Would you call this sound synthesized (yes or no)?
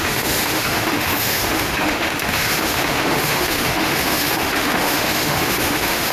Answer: yes